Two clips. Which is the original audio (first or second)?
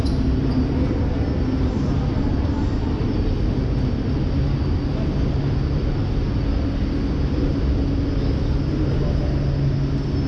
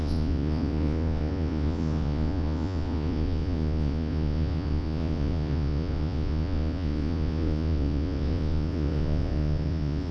first